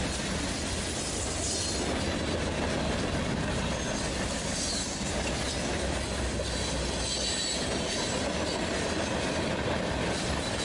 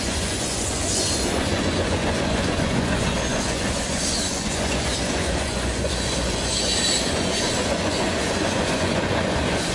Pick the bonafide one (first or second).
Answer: first